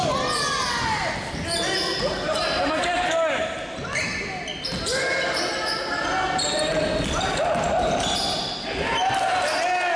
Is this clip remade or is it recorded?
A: recorded